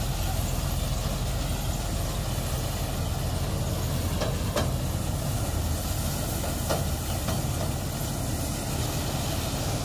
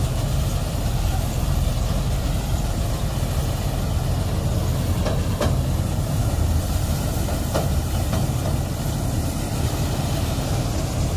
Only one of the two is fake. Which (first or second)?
second